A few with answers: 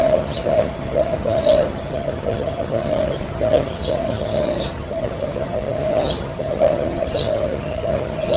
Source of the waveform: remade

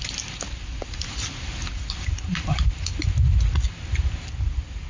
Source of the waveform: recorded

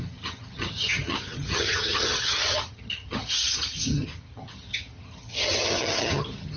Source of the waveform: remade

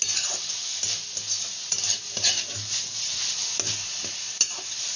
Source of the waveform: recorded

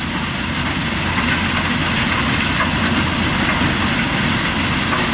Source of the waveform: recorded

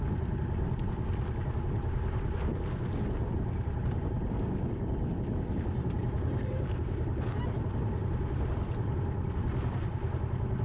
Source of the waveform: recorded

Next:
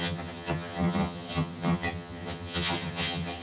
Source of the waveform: remade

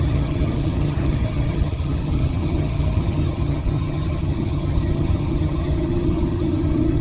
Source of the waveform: remade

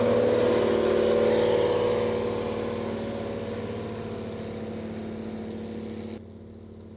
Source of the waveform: recorded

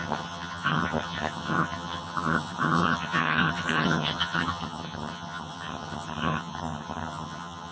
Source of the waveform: remade